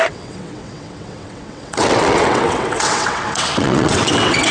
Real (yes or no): no